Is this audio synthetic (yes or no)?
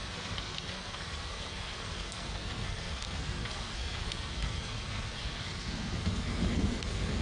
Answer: yes